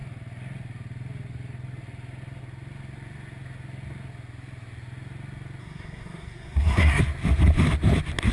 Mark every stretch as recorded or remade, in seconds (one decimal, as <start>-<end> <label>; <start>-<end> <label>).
0.0-5.6 recorded; 5.6-7.0 remade; 7.0-8.3 recorded